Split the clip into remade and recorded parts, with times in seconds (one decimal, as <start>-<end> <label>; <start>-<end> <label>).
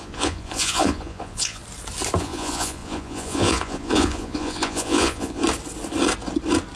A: 0.0-1.6 remade; 1.6-2.2 recorded; 2.2-5.4 remade; 5.4-6.8 recorded